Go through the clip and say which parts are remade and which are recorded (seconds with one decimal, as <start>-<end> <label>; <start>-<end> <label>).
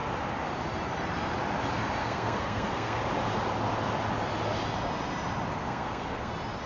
0.0-2.0 recorded; 2.0-3.0 remade; 3.0-5.6 recorded; 5.6-6.3 remade; 6.3-6.7 recorded